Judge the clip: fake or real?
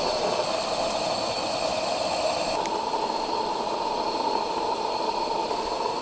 real